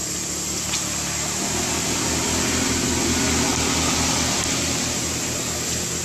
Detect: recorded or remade recorded